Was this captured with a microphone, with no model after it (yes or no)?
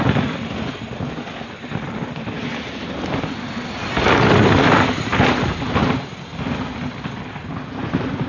yes